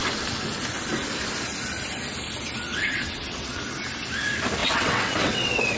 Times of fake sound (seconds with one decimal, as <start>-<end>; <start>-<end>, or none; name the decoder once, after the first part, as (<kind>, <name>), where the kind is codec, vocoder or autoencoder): 2.7-3.6 (vocoder, WaveNeXt); 4.6-5.8